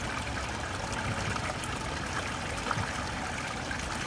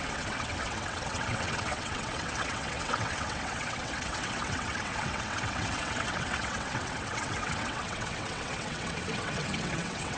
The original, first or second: first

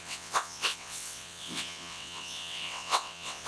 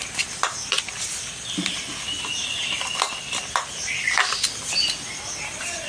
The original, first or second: second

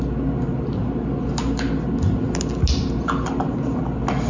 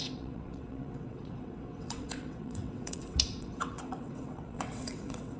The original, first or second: first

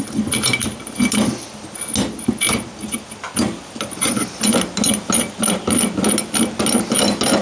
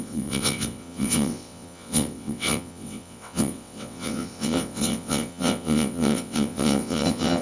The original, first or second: first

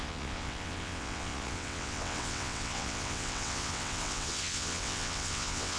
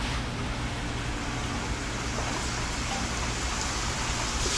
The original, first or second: second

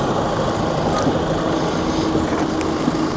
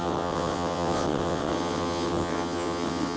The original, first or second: first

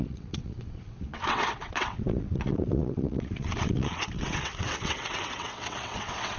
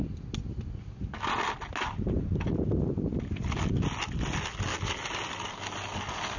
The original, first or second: second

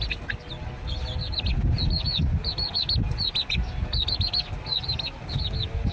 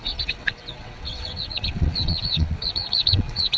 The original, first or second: first